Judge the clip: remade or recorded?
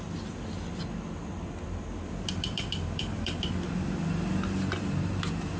recorded